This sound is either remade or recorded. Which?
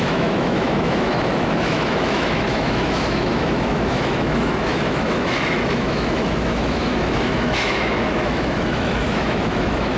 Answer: remade